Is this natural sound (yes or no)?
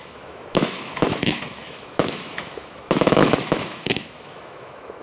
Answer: no